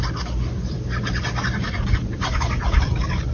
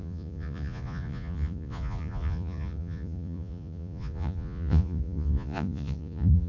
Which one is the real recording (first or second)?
first